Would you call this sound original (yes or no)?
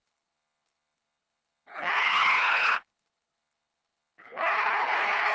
no